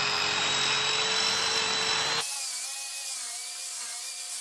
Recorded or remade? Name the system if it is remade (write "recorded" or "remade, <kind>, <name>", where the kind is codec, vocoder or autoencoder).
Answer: recorded